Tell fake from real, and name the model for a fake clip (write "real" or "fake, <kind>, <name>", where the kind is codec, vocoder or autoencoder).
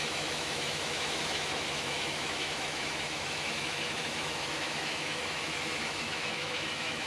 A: fake, autoencoder, DAC-VAE